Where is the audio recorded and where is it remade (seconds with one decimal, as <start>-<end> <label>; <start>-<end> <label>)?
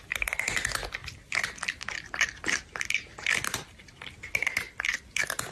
0.0-5.5 recorded